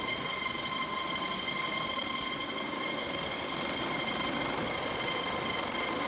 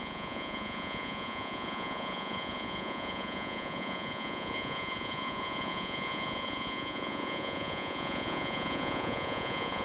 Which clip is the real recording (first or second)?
first